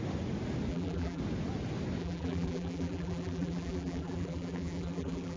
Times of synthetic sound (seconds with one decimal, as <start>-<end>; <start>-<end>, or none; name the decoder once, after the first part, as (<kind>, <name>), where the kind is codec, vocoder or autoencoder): 0.7-1.2 (vocoder, BigVGAN v2); 2.0-5.4